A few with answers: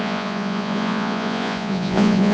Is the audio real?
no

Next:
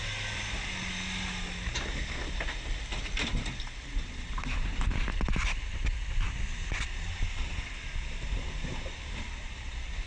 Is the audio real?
yes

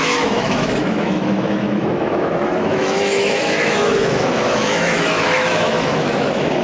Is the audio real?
no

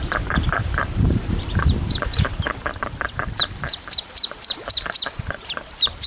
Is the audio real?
no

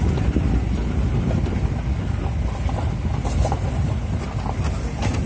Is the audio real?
yes